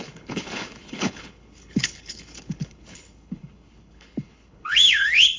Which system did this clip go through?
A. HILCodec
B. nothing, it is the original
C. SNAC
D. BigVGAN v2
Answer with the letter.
A